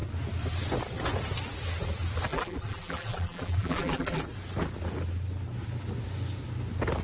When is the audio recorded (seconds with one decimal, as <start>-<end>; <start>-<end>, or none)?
0.0-2.3; 4.2-7.0

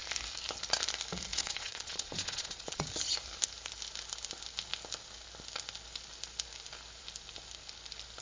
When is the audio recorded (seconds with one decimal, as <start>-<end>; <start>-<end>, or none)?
0.0-1.3; 2.9-8.2

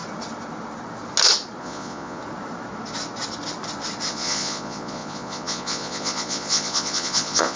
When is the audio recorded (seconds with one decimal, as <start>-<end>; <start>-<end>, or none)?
0.0-1.6; 2.2-4.1

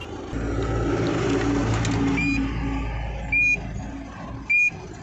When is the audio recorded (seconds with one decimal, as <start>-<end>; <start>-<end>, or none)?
0.0-5.0

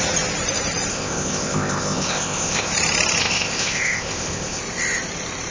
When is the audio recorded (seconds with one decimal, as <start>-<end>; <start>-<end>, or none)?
0.0-0.9; 2.7-3.2; 4.6-5.5

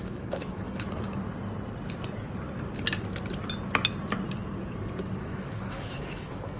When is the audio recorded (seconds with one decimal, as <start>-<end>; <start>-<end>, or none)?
1.2-5.2

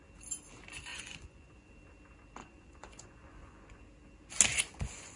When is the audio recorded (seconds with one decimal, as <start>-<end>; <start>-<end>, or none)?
0.0-0.9; 1.7-2.4; 3.8-4.5